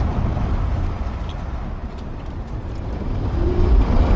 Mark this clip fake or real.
fake